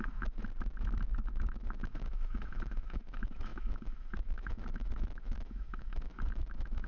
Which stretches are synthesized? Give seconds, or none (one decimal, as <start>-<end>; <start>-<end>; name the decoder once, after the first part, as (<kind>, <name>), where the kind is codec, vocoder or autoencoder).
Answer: 0.0-0.5 (autoencoder, DAC-VAE); 1.3-6.9